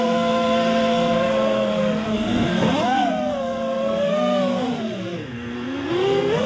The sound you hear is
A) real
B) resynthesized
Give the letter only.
B